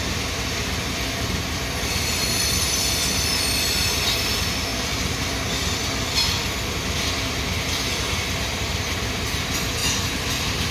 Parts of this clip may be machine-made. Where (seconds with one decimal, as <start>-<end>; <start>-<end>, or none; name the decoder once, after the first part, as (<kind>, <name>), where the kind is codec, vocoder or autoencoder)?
9.8-10.7 (vocoder, BigVGAN v2)